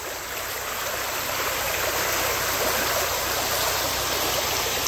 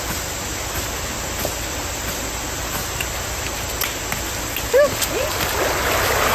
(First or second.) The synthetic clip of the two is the first